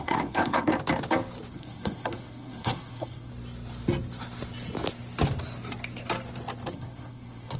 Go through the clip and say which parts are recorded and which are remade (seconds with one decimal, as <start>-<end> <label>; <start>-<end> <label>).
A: 0.0-0.7 remade; 0.7-1.5 recorded; 1.5-3.3 remade; 3.3-6.7 recorded; 6.7-7.6 remade